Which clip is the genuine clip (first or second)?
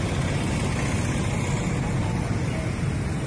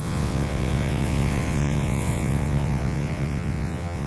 first